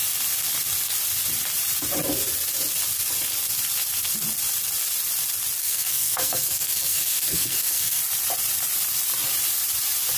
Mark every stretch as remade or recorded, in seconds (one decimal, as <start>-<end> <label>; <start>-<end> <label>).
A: 0.0-5.6 recorded; 5.6-8.0 remade; 8.0-10.2 recorded